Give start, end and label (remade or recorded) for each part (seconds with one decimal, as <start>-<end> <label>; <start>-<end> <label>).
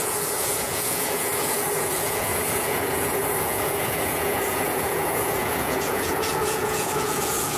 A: 0.0-7.6 remade